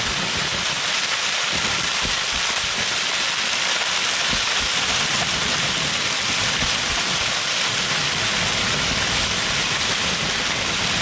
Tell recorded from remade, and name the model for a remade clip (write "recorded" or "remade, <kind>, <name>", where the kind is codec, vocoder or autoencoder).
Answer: recorded